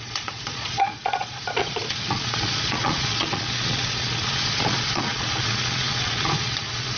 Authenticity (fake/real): fake